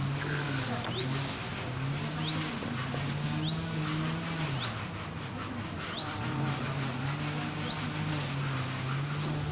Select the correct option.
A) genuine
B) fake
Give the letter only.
A